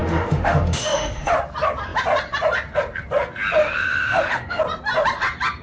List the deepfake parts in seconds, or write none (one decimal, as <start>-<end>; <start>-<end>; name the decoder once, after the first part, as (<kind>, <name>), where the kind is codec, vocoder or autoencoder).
0.0-1.3 (autoencoder, DAC-VAE); 3.6-4.6